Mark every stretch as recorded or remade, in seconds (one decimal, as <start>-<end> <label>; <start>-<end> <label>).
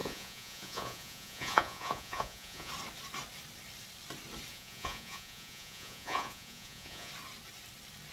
0.0-2.7 remade; 2.7-4.5 recorded; 4.5-7.1 remade; 7.1-8.1 recorded